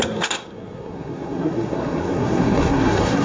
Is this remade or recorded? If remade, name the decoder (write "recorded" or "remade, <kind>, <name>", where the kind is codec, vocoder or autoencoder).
remade, codec, SNAC